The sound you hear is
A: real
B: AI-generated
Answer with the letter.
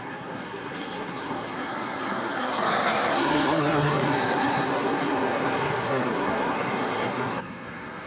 B